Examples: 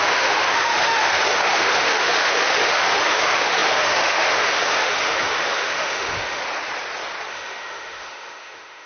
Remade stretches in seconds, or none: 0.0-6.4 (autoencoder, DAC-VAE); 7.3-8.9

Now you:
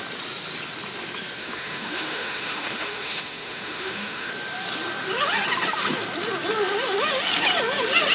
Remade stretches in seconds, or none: 1.4-4.3 (autoencoder, DAC-VAE)

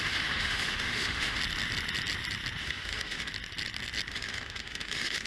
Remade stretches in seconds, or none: 0.0-1.4 (autoencoder, DAC-VAE); 2.6-3.3; 4.1-5.3

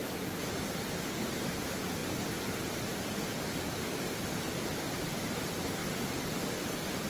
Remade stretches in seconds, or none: none

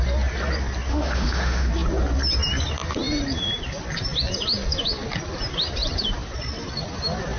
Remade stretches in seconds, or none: 0.9-1.7 (autoencoder, DAC-VAE)